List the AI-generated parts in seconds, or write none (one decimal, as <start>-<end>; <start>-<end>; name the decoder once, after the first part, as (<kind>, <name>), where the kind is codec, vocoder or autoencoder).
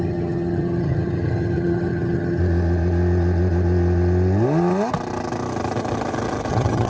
0.0-2.4 (vocoder, HiFi-GAN); 6.5-6.9